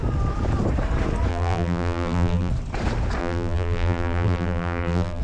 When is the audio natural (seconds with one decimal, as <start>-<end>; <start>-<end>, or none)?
0.0-1.3; 2.5-3.2